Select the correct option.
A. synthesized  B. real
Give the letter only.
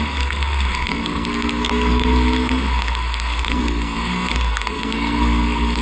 A